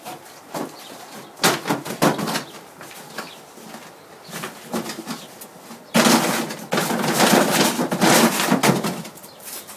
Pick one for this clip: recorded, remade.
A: recorded